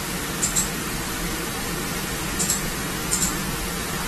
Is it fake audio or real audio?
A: fake